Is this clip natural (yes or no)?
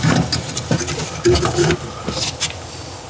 yes